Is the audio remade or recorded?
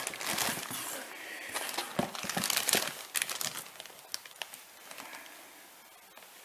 recorded